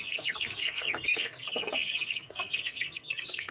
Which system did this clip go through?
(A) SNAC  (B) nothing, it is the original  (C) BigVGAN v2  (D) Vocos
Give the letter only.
A